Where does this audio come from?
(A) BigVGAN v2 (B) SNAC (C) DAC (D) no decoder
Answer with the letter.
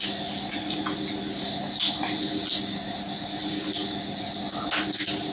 D